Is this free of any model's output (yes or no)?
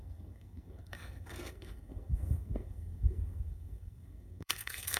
no